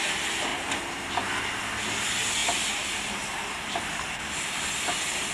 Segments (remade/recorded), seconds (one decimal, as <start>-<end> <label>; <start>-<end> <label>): 0.0-2.4 recorded; 2.4-4.8 remade; 4.8-5.3 recorded